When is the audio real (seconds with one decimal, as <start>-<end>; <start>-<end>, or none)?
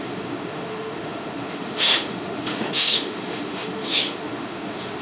none